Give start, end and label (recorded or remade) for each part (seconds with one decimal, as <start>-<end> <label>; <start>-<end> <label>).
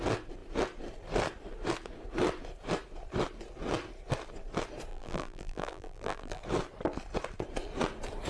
0.0-4.9 recorded; 4.9-6.4 remade; 6.4-8.3 recorded